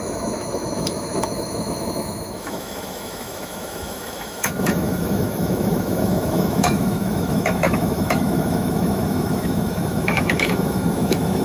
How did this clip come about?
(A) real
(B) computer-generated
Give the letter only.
B